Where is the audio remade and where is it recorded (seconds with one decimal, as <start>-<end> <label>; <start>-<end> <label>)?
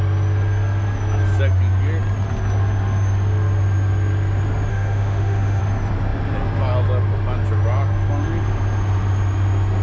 0.0-4.7 recorded; 4.7-5.6 remade; 5.6-9.8 recorded